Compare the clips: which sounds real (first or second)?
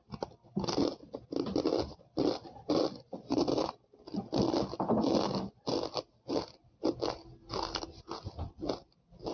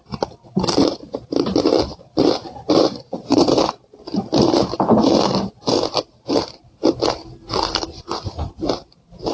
first